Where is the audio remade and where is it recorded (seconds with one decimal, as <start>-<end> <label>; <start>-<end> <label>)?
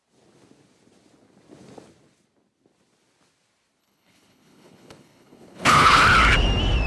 0.0-3.8 recorded; 3.8-6.0 remade; 6.0-6.9 recorded